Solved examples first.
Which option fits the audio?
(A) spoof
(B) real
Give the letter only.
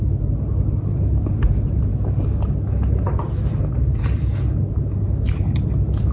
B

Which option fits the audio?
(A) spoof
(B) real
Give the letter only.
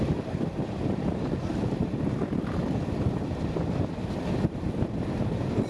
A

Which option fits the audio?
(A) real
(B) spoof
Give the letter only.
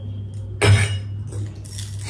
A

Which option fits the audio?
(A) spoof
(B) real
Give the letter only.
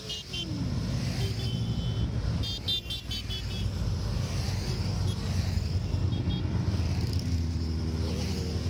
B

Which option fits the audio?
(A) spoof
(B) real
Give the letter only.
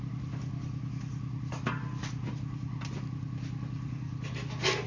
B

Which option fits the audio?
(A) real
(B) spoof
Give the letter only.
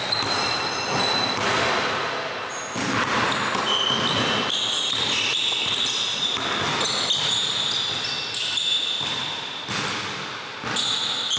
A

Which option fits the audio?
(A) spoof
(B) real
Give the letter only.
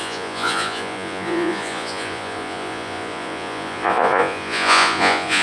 A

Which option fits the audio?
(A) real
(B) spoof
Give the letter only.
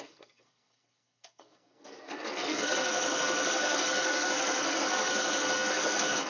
B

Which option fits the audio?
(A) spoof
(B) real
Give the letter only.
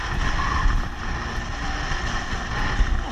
B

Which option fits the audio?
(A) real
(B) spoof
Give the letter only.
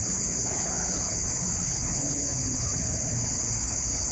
B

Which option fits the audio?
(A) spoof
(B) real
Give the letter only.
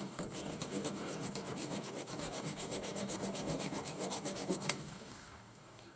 A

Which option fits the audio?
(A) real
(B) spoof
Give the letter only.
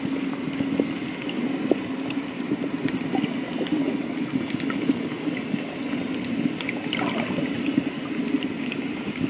A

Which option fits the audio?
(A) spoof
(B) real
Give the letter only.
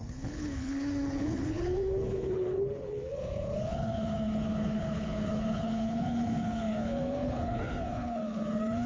A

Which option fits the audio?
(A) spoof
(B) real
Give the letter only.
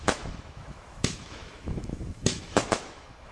A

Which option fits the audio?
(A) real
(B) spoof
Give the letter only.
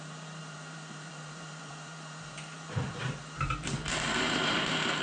B